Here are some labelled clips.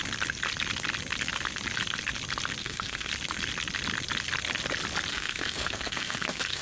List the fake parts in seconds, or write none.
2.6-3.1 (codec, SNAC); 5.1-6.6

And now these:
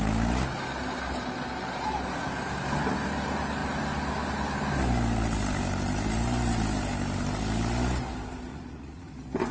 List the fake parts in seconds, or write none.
8.5-9.1 (vocoder, Vocos)

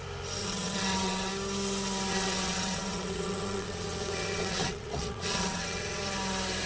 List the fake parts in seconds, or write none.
0.4-1.3 (vocoder, WaveNeXt); 2.1-6.0